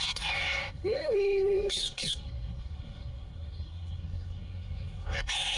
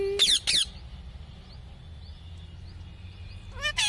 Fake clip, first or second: first